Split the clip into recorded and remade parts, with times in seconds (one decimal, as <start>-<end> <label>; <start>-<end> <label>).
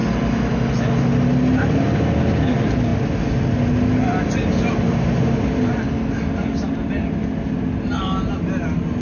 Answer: 0.0-9.0 recorded